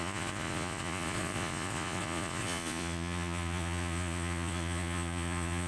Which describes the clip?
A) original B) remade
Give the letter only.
B